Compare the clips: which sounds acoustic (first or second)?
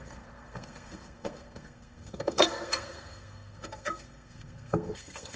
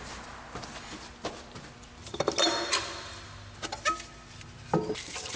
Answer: second